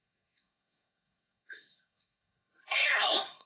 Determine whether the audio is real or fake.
fake